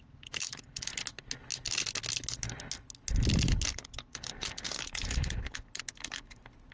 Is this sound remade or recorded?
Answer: recorded